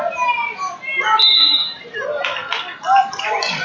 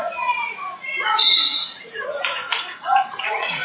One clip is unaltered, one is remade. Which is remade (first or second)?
second